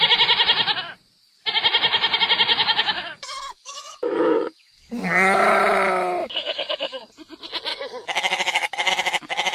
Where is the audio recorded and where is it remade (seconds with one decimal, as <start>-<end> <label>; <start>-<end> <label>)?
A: 0.0-2.5 recorded; 2.5-5.6 remade; 5.6-6.2 recorded; 6.2-7.1 remade; 7.1-7.7 recorded; 7.7-8.9 remade; 8.9-9.5 recorded